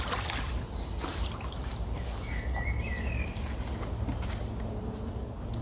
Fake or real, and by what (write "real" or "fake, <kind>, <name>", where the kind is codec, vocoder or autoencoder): real